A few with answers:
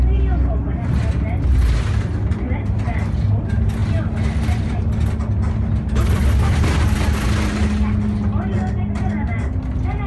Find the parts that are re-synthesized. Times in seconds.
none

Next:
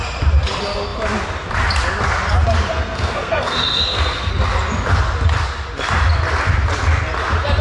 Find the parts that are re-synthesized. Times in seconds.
2.7-4.3 (codec, SNAC)

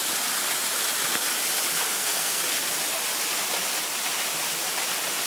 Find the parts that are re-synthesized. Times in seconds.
1.8-2.4 (codec, SNAC)

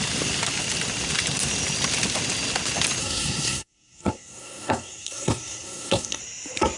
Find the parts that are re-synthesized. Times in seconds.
3.0-6.2 (codec, SNAC)

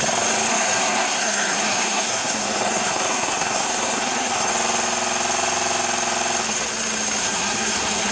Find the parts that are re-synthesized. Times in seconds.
0.5-4.5 (codec, SNAC); 7.2-8.1

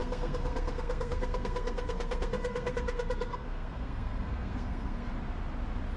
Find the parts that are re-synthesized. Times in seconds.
0.0-5.1 (codec, SNAC)